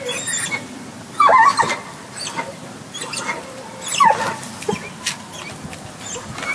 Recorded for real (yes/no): yes